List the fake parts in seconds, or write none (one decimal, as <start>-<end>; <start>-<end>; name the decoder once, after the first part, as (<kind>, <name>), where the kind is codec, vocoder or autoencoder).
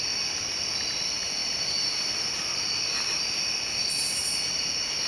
none